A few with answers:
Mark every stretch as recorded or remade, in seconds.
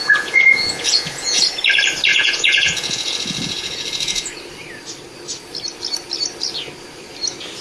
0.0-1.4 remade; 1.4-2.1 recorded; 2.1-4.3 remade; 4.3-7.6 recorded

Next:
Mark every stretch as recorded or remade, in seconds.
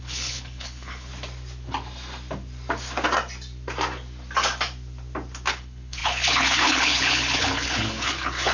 0.0-1.1 remade; 1.1-5.5 recorded; 5.5-8.5 remade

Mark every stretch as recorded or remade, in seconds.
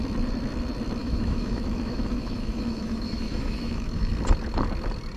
0.0-1.0 recorded; 1.0-4.1 remade; 4.1-5.2 recorded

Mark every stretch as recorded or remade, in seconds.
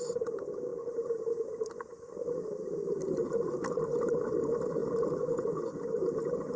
0.0-6.6 recorded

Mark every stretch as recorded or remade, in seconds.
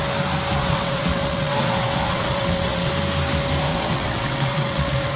0.0-0.6 recorded; 0.6-2.9 remade; 2.9-3.7 recorded; 3.7-5.2 remade